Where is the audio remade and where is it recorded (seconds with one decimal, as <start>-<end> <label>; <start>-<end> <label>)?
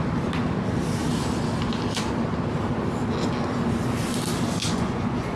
0.0-4.6 recorded; 4.6-5.4 remade